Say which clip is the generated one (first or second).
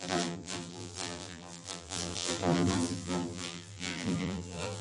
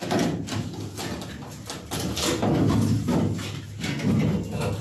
first